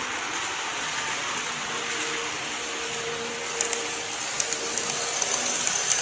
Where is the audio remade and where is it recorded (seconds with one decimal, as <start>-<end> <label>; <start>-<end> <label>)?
0.0-6.0 recorded